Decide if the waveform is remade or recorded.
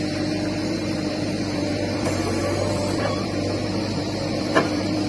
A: remade